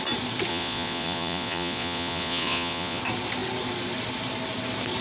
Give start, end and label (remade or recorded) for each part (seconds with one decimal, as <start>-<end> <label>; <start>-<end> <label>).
0.0-0.5 recorded; 0.5-3.0 remade; 3.0-5.0 recorded